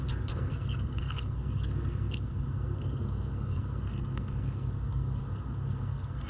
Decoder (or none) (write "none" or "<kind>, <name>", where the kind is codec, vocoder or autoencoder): codec, SNAC